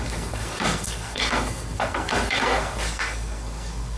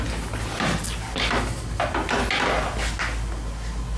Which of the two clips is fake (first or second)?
first